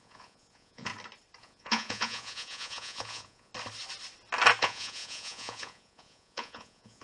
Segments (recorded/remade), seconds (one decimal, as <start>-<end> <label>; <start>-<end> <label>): 0.0-0.9 remade; 0.9-1.4 recorded; 1.4-3.5 remade; 3.5-4.6 recorded; 4.6-7.0 remade